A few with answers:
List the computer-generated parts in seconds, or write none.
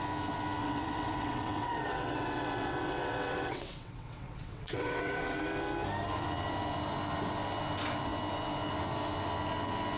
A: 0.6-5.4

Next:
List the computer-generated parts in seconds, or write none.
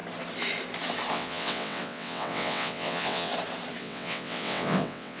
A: 1.1-3.3; 3.8-5.2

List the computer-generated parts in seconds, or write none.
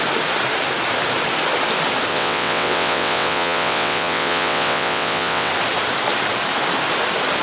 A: 2.1-5.5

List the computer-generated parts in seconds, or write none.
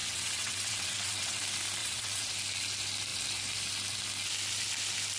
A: 0.0-1.4; 1.8-2.3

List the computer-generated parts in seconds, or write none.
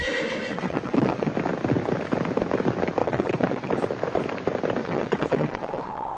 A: 0.5-1.3; 3.0-3.7; 4.8-6.2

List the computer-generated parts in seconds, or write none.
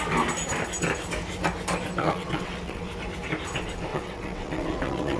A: 2.0-2.9; 3.9-5.2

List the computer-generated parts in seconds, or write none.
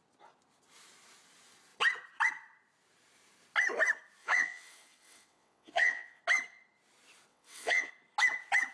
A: 4.2-6.2; 7.3-7.9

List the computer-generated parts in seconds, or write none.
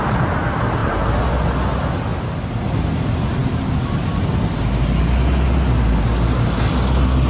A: none